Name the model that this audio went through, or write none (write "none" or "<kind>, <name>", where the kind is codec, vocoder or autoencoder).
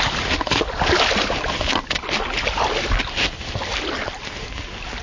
none